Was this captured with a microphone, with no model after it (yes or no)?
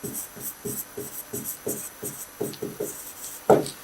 yes